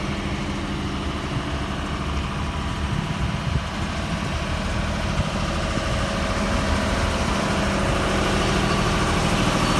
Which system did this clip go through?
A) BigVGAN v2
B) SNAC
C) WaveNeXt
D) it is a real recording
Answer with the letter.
D